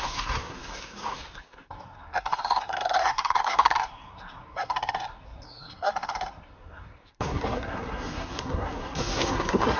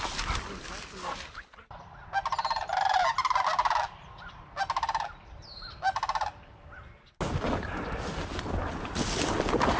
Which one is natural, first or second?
second